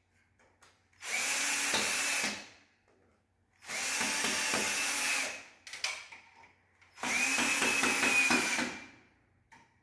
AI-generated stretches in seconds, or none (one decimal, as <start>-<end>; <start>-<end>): none